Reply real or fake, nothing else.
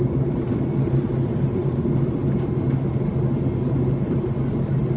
real